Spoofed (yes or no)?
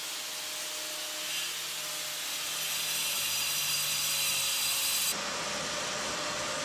no